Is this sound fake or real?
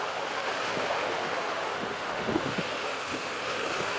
fake